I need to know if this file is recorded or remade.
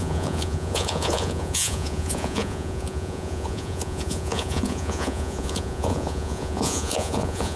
remade